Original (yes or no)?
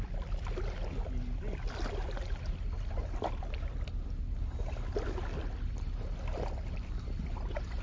yes